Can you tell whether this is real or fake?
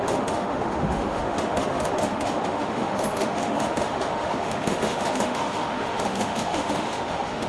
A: fake